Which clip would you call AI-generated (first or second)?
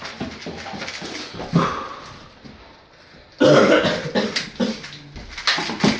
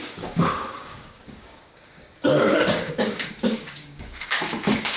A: second